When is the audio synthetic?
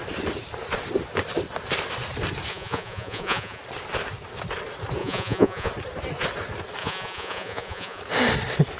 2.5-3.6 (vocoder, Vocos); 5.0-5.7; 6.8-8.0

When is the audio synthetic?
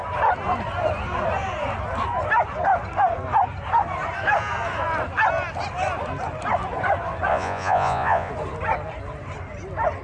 7.3-8.3 (vocoder, Vocos)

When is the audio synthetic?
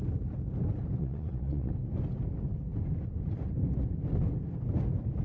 1.0-1.7 (vocoder, Vocos)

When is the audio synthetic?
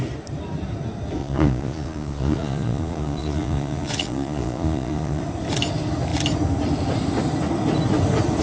1.2-5.2 (vocoder, Vocos)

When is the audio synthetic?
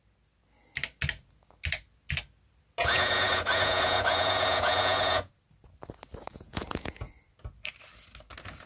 2.8-5.3 (vocoder, Vocos); 6.3-7.1